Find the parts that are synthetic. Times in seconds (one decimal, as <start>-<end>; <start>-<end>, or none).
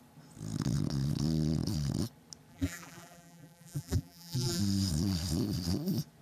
2.5-4.6